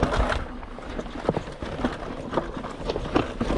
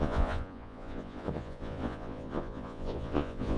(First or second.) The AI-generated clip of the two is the second